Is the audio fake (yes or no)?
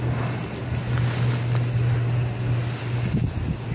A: no